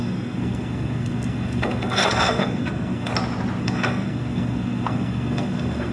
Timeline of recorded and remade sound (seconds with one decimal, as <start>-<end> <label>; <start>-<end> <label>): 0.0-3.1 remade; 3.1-3.6 recorded; 3.6-5.9 remade